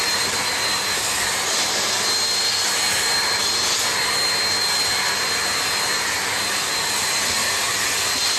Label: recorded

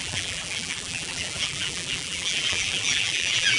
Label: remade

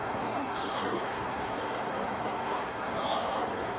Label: remade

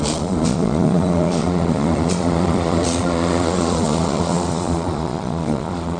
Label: remade